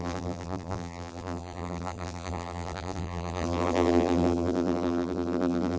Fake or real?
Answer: fake